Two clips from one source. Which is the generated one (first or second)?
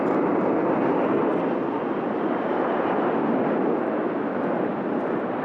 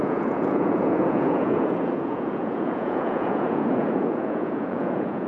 second